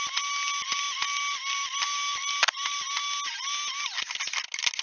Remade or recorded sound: recorded